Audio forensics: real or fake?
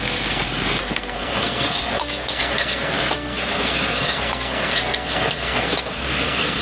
fake